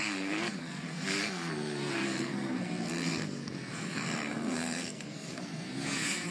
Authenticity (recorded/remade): remade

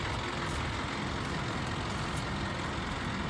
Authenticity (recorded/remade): recorded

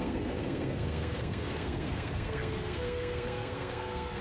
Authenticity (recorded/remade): remade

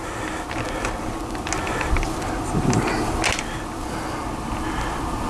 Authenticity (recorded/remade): recorded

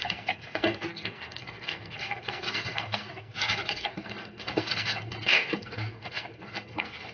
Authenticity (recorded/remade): remade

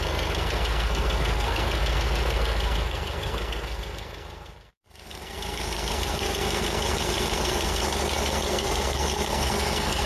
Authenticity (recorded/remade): remade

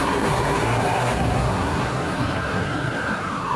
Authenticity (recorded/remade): remade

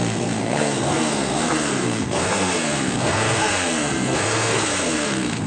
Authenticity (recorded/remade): remade